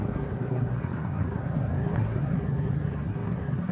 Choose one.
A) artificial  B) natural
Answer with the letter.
A